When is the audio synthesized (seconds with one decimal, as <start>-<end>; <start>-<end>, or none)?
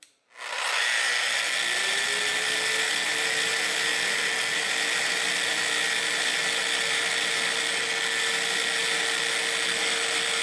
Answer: none